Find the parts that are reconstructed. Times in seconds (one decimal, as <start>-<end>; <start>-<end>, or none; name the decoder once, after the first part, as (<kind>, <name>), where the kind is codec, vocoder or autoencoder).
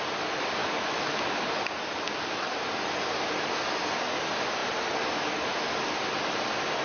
0.6-1.2 (autoencoder, DAC-VAE)